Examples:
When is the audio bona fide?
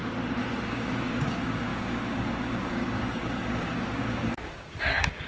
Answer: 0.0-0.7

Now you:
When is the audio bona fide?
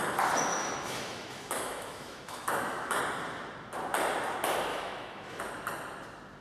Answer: 0.0-0.5; 3.0-4.7; 5.4-6.4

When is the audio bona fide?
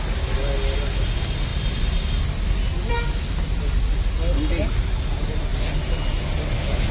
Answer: 0.0-6.9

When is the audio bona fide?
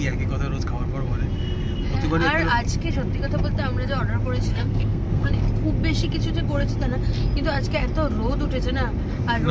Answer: 0.0-4.5; 5.3-9.5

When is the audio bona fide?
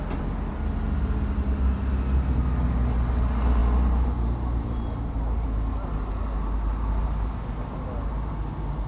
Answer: 0.0-8.9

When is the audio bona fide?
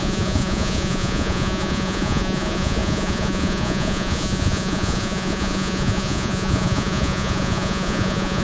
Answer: none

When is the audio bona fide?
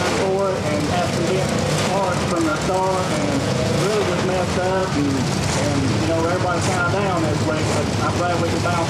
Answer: 0.0-2.5; 3.7-8.9